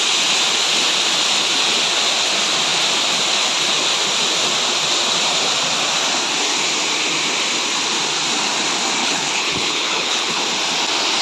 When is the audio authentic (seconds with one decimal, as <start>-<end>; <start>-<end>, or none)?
0.0-9.0; 10.4-11.2